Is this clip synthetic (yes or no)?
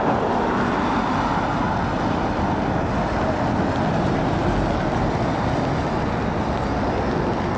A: no